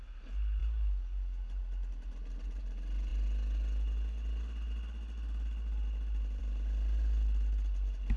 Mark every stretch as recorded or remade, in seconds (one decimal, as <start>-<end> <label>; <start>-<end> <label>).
0.0-8.2 recorded

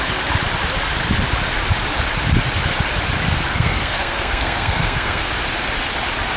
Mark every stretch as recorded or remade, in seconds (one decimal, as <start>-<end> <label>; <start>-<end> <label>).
0.0-3.5 recorded; 3.5-5.3 remade; 5.3-6.4 recorded

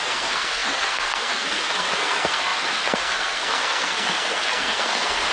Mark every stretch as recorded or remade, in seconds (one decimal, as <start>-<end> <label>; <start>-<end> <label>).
0.0-5.3 remade

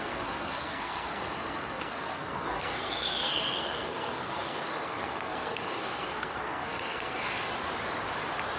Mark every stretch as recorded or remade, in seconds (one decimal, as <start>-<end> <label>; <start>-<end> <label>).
0.0-7.5 remade; 7.5-8.6 recorded

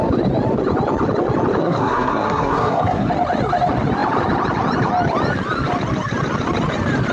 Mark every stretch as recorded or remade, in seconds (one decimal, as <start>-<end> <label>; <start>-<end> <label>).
0.0-1.6 recorded; 1.6-3.1 remade; 3.1-7.1 recorded